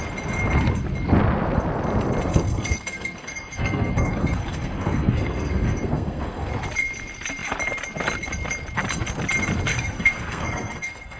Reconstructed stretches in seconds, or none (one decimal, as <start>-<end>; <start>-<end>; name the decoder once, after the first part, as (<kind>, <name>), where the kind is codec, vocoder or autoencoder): 2.3-6.5 (codec, SNAC); 9.7-11.2